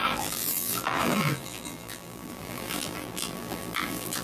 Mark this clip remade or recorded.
remade